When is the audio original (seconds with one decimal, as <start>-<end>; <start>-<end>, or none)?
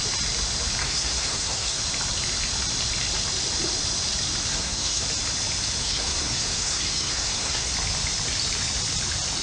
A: 0.0-0.8; 1.8-4.5; 5.0-5.8; 7.7-9.4